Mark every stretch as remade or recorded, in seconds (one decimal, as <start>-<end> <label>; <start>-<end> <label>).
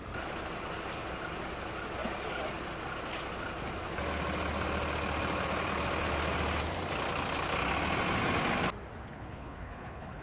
0.0-9.1 recorded; 9.1-10.2 remade